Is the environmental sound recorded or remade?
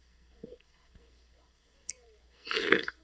remade